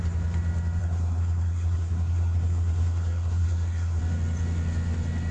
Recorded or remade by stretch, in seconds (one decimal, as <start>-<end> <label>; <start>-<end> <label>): 0.0-0.8 recorded; 0.8-4.0 remade; 4.0-5.3 recorded